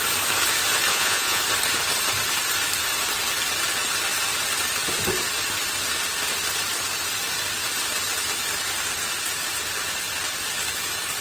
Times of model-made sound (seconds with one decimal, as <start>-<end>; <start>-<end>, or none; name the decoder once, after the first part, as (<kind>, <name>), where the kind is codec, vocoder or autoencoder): 0.9-1.4 (vocoder, Vocos)